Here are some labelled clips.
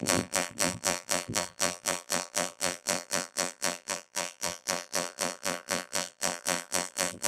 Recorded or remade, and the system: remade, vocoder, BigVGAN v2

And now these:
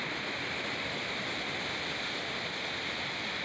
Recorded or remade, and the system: recorded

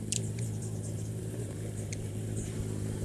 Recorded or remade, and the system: remade, vocoder, BigVGAN v2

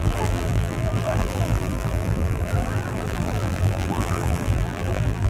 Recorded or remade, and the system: remade, vocoder, BigVGAN v2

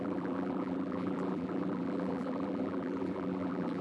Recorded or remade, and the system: remade, vocoder, BigVGAN v2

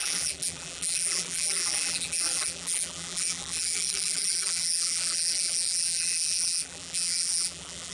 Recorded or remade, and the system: remade, vocoder, BigVGAN v2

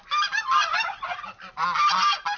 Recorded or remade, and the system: recorded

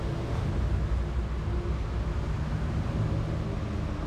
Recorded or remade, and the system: recorded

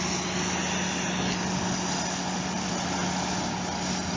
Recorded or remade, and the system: recorded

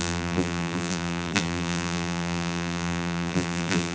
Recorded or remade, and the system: remade, vocoder, BigVGAN v2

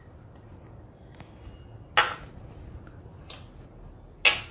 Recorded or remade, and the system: recorded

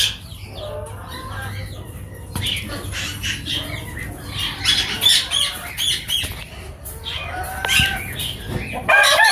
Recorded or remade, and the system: recorded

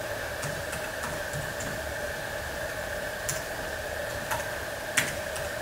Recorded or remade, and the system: recorded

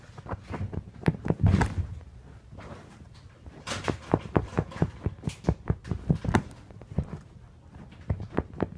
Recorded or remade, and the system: recorded